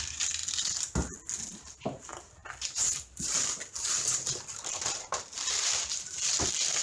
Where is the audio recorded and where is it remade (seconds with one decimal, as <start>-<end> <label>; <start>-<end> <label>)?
0.0-0.4 remade; 0.4-1.6 recorded; 1.6-6.8 remade